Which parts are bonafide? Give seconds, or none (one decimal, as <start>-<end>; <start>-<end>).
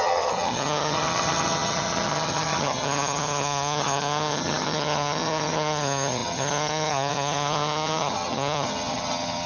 none